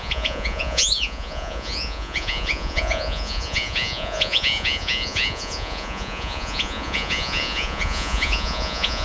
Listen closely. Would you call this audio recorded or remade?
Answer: remade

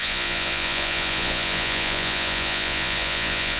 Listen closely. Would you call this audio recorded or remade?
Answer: remade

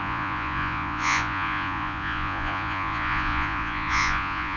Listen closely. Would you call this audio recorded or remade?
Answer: remade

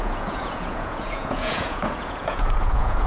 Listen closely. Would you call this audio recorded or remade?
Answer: remade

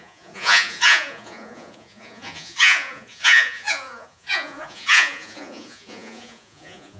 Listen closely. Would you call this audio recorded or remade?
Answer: remade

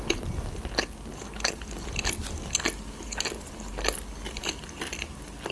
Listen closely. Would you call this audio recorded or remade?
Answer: recorded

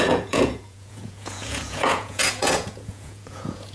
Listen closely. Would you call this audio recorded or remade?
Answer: remade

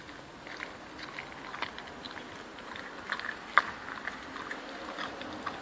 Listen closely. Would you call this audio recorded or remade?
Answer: recorded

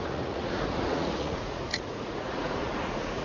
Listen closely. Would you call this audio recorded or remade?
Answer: remade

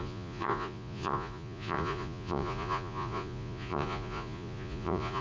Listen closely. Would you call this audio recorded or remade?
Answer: remade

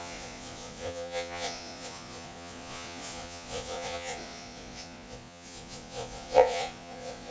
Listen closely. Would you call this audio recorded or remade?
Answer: remade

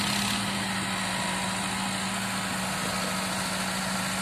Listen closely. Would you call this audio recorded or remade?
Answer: recorded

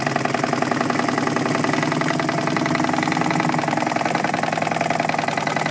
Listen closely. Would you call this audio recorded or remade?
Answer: recorded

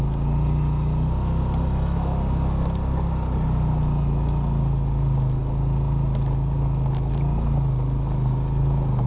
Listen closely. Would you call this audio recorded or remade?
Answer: recorded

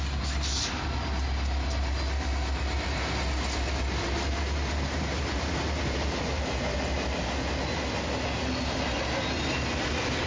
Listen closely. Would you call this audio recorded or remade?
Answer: recorded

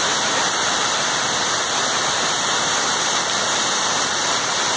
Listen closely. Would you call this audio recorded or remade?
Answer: recorded